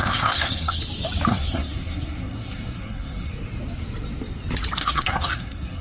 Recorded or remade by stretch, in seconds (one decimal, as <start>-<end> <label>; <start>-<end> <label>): 0.0-0.8 remade; 0.8-1.3 recorded; 1.3-3.3 remade; 3.3-4.8 recorded; 4.8-5.8 remade

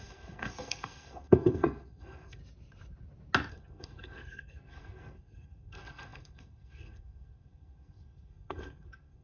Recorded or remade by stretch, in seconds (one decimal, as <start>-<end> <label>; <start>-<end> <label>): 0.0-2.4 remade; 2.4-3.5 recorded; 3.5-9.2 remade

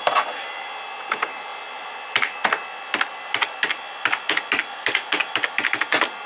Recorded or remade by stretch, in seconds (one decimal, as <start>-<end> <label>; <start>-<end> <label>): 0.0-6.3 recorded

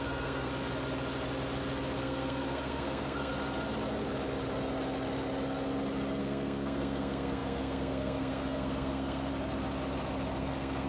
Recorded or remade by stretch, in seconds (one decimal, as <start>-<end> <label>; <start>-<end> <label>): 0.0-0.5 remade; 0.5-2.0 recorded; 2.0-3.3 remade; 3.3-6.2 recorded; 6.2-9.3 remade; 9.3-10.4 recorded; 10.4-10.9 remade